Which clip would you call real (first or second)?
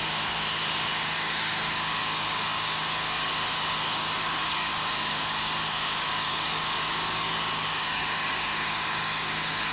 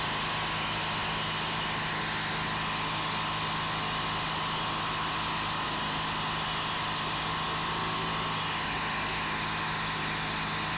second